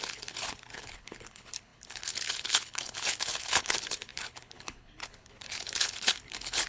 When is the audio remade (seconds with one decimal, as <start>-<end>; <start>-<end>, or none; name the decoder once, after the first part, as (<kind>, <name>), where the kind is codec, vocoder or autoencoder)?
0.0-6.7 (codec, HILCodec)